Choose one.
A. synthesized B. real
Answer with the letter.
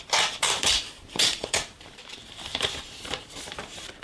A